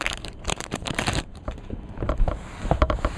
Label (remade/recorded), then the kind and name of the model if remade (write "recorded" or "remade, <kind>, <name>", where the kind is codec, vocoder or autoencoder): remade, vocoder, BigVGAN v2